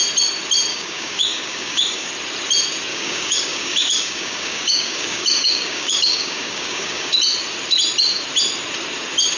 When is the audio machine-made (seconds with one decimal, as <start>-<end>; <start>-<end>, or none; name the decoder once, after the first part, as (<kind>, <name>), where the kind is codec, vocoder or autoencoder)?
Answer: 0.7-2.1 (codec, DAC); 2.9-7.1